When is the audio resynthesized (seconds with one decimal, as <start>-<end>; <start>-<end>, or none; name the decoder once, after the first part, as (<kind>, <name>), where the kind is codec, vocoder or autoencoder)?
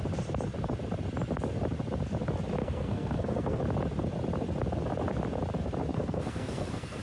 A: 2.6-3.6 (codec, SNAC); 5.9-7.0